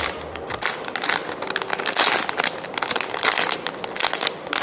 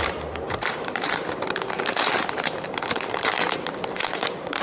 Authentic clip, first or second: first